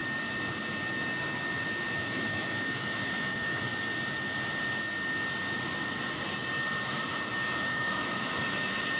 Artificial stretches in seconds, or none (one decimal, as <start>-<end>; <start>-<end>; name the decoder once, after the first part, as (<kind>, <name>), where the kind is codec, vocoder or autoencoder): 1.5-3.7 (autoencoder, DAC-VAE); 7.3-9.0